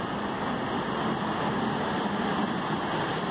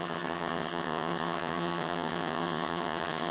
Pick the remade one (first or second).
second